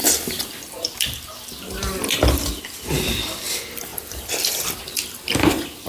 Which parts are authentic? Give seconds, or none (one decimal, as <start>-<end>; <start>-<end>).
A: 3.5-3.9; 4.8-5.9